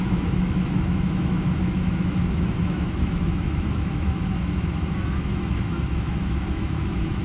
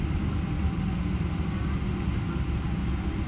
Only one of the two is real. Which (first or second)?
second